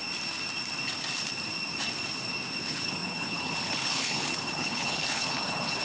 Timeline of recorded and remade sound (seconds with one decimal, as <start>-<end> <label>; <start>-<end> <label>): 0.0-2.6 recorded; 2.6-5.8 remade